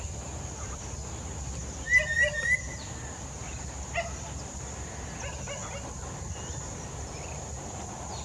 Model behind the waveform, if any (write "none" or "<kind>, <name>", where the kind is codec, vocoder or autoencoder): none